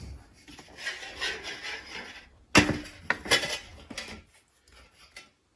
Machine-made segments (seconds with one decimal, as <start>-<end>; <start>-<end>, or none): none